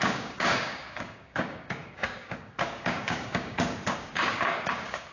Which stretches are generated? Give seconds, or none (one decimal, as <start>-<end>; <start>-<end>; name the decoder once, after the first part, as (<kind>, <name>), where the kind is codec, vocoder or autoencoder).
0.0-5.1 (codec, DAC)

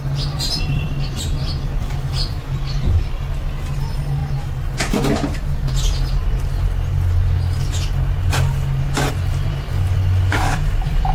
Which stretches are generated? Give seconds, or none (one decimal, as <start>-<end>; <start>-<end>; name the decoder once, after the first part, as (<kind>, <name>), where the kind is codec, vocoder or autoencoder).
0.0-4.2 (vocoder, BigVGAN v2); 9.1-9.7; 10.3-11.1

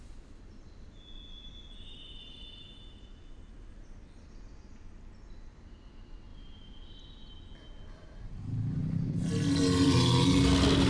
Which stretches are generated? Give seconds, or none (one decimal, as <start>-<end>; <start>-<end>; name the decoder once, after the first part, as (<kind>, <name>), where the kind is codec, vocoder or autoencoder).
none

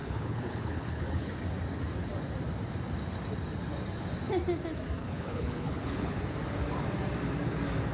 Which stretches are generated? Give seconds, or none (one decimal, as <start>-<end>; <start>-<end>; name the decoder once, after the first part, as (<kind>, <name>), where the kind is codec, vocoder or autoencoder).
0.0-1.3 (codec, HILCodec); 5.0-6.2

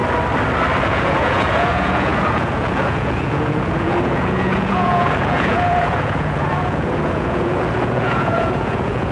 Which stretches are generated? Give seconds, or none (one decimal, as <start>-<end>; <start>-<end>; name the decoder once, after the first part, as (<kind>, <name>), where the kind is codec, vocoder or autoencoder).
0.8-9.1 (vocoder, Vocos)

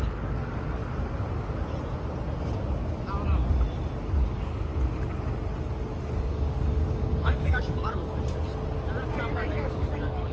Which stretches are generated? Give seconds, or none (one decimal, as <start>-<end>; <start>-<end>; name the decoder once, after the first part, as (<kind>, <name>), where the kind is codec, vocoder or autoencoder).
0.0-0.8 (codec, DAC); 4.2-4.7; 6.2-8.1; 9.3-10.3

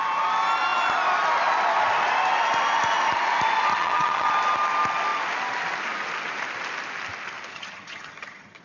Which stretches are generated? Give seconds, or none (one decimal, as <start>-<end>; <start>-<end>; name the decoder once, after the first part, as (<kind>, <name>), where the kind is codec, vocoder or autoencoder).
3.7-4.3 (vocoder, HiFi-GAN); 7.5-8.6

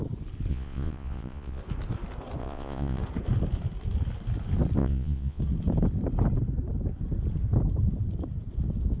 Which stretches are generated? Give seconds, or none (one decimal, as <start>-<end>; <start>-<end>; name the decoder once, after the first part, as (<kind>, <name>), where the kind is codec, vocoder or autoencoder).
0.5-1.6 (vocoder, Vocos); 2.4-3.0; 4.8-5.4